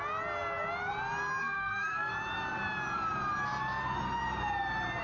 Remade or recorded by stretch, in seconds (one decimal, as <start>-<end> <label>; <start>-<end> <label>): 0.0-1.4 recorded; 1.4-2.1 remade; 2.1-5.0 recorded